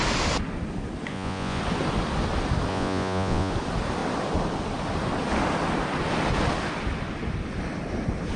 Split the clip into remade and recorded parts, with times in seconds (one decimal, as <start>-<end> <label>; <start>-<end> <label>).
0.0-1.1 recorded; 1.1-1.6 remade; 1.6-2.7 recorded; 2.7-3.5 remade; 3.5-8.4 recorded